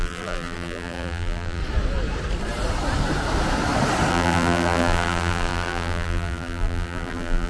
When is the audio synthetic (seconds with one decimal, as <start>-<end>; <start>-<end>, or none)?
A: 0.0-1.6; 4.1-7.5